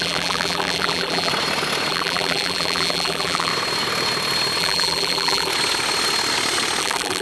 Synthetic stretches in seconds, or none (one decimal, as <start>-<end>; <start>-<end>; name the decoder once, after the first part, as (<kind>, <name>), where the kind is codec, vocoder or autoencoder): 0.0-1.3 (vocoder, BigVGAN v2); 1.9-3.5; 4.6-5.5; 6.8-7.2